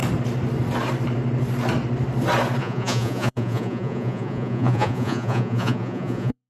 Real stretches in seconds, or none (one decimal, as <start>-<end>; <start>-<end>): 0.0-2.6